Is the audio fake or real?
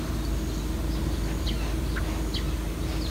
real